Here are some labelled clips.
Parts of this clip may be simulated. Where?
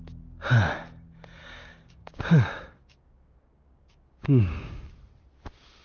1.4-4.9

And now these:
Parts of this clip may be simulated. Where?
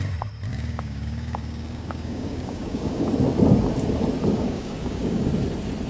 0.5-3.1; 4.3-5.3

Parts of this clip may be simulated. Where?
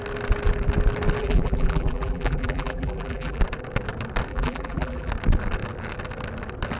1.2-3.4; 4.3-5.1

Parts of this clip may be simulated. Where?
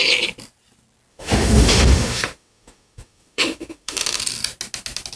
1.1-4.2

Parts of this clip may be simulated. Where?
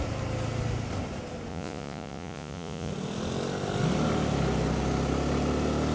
1.5-2.9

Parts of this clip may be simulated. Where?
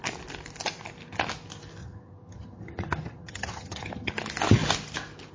1.8-4.1